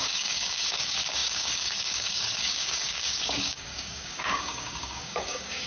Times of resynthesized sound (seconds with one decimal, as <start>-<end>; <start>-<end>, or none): 0.0-5.7